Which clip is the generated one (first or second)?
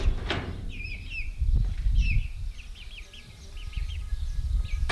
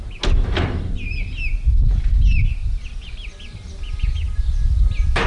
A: first